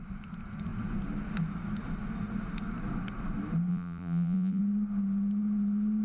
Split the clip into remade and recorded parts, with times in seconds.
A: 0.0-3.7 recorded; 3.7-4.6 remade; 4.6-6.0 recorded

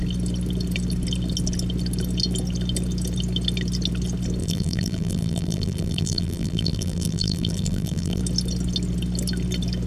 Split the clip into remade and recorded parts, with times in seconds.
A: 0.0-4.4 recorded; 4.4-8.2 remade; 8.2-9.9 recorded

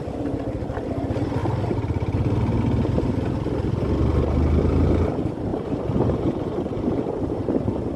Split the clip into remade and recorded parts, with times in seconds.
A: 0.0-1.4 recorded; 1.4-2.6 remade; 2.6-5.5 recorded; 5.5-7.5 remade; 7.5-8.0 recorded

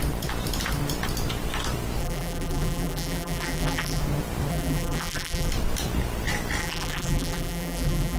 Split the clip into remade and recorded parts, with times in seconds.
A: 0.0-2.0 recorded; 2.0-4.0 remade; 4.0-4.5 recorded; 4.5-5.5 remade; 5.5-6.6 recorded; 6.6-8.2 remade

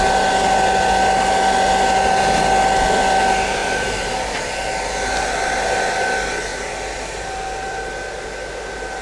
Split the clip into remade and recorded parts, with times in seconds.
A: 0.0-3.6 recorded; 3.6-4.5 remade; 4.5-6.5 recorded; 6.5-7.8 remade; 7.8-9.0 recorded

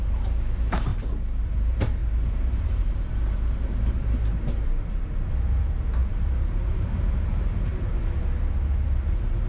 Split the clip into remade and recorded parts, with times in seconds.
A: 0.0-0.9 remade; 0.9-1.4 recorded; 1.4-9.5 remade